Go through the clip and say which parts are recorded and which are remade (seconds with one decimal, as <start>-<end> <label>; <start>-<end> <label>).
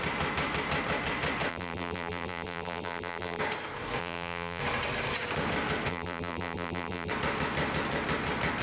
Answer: 0.0-1.5 recorded; 1.5-3.4 remade; 3.4-4.0 recorded; 4.0-4.6 remade; 4.6-5.9 recorded; 5.9-7.1 remade; 7.1-8.6 recorded